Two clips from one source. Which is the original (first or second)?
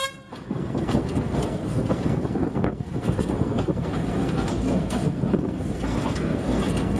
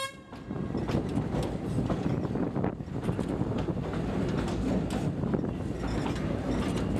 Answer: second